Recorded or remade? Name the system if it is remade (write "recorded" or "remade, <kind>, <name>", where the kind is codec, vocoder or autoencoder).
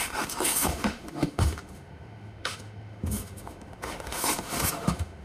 remade, autoencoder, DAC-VAE